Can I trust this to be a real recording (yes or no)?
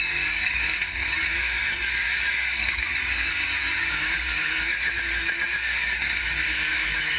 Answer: no